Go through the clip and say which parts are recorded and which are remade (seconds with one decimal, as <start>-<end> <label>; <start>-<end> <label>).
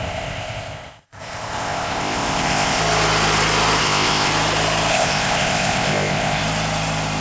0.0-2.8 remade; 2.8-3.8 recorded; 3.8-4.3 remade; 4.3-4.9 recorded; 4.9-6.4 remade; 6.4-7.2 recorded